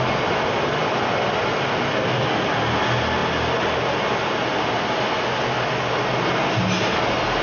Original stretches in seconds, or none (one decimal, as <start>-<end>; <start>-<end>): 0.0-7.4